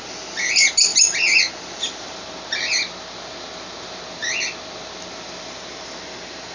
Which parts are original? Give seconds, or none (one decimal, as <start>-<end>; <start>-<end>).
0.0-6.5